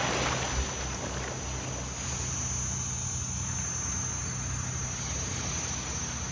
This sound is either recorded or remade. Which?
recorded